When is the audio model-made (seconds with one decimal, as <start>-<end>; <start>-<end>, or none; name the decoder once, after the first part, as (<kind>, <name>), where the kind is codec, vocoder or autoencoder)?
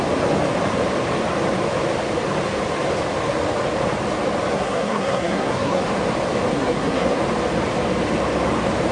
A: 4.5-5.8 (codec, SNAC); 6.5-7.2